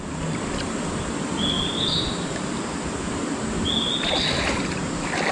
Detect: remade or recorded recorded